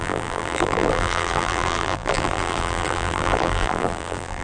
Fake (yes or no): yes